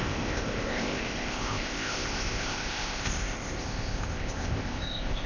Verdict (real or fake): fake